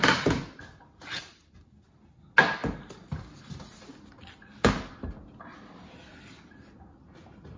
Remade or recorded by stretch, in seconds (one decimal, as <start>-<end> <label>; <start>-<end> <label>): 0.0-7.6 recorded